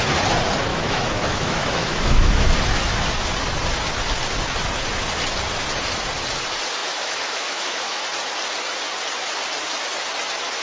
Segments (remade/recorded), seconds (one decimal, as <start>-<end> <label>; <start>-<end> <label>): 0.0-0.7 recorded; 0.7-2.5 remade; 2.5-6.8 recorded; 6.8-8.0 remade; 8.0-10.6 recorded

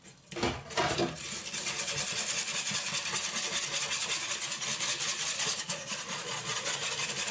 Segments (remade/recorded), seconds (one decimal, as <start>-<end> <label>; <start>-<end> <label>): 0.0-5.3 recorded; 5.3-6.7 remade; 6.7-7.3 recorded

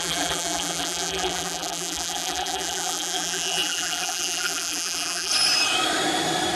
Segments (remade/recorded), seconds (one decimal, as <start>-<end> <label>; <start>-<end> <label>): 0.0-5.3 remade; 5.3-6.6 recorded

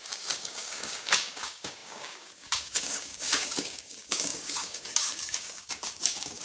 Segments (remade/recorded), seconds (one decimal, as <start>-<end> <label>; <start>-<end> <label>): 0.0-6.4 remade